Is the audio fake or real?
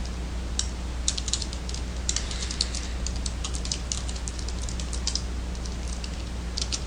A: real